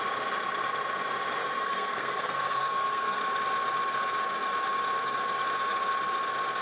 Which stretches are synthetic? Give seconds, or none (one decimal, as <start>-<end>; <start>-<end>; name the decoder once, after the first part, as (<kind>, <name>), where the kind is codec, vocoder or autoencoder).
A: 1.4-3.2 (codec, SNAC)